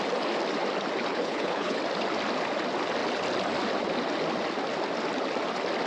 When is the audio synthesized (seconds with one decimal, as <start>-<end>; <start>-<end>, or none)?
1.1-1.8